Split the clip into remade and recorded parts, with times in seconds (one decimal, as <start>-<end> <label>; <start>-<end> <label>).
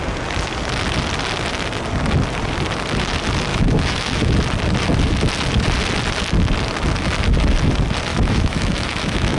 0.0-3.5 recorded; 3.5-4.3 remade; 4.3-8.1 recorded; 8.1-9.4 remade